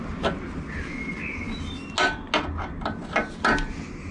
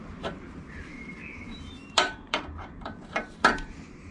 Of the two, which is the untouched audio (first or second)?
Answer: first